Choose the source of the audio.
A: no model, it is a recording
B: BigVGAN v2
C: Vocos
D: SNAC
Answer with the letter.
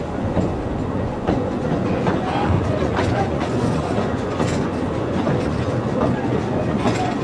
C